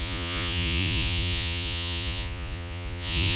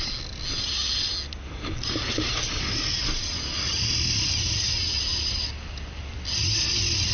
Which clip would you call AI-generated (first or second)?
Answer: first